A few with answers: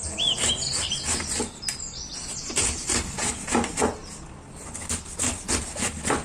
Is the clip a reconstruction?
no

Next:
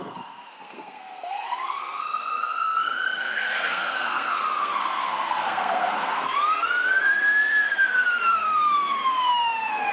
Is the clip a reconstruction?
yes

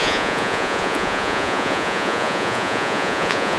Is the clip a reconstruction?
yes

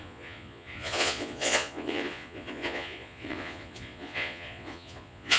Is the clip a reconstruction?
yes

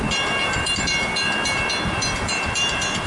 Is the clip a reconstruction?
yes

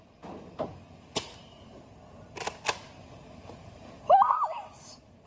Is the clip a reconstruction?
no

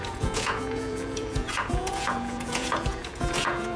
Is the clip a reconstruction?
yes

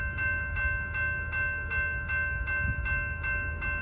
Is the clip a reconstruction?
no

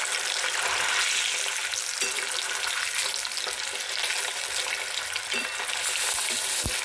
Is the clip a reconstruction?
no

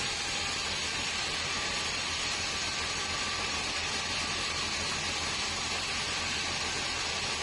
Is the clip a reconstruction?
no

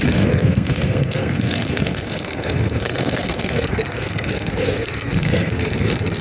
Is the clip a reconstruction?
yes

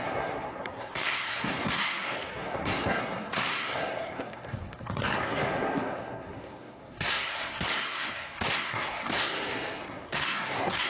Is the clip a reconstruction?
yes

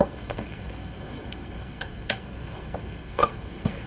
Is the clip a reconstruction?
yes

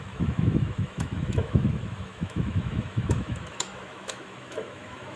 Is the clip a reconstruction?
yes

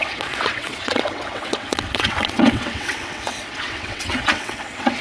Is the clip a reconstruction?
yes